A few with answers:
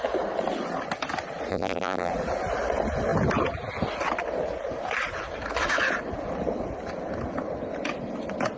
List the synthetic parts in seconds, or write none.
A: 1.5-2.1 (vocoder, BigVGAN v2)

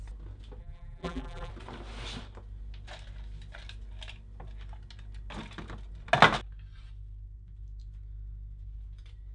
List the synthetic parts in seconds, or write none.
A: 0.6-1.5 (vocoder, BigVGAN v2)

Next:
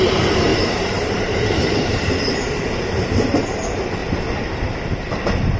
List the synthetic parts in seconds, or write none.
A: 0.0-4.0 (vocoder, BigVGAN v2); 5.1-5.6